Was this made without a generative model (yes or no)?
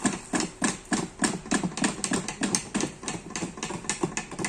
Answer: yes